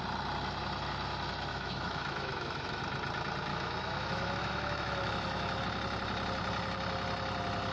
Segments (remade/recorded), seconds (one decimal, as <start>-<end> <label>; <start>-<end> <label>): 0.0-1.5 recorded; 1.5-2.8 remade; 2.8-3.5 recorded; 3.5-5.6 remade; 5.6-7.7 recorded